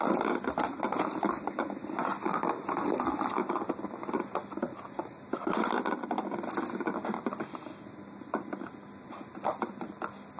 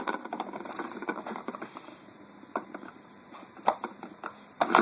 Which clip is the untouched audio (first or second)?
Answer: first